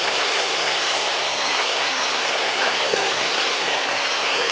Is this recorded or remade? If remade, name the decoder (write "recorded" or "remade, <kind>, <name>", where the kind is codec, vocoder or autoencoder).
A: remade, codec, SNAC